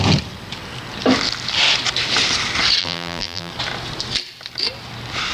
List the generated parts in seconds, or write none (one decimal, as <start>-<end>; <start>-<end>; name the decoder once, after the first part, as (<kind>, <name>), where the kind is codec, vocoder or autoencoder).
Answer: 2.8-3.5 (vocoder, BigVGAN v2)